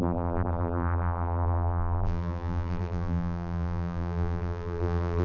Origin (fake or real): fake